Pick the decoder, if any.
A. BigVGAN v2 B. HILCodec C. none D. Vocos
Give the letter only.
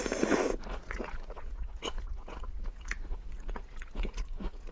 D